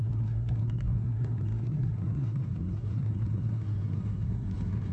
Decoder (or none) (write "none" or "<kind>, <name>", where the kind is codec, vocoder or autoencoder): codec, SNAC